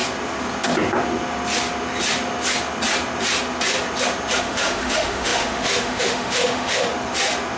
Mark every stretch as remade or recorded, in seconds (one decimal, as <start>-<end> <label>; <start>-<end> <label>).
0.0-4.4 recorded; 4.4-6.9 remade; 6.9-7.6 recorded